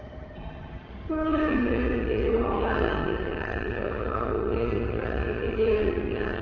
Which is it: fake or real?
fake